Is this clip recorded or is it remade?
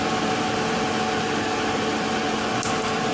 recorded